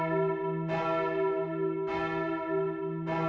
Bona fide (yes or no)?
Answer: yes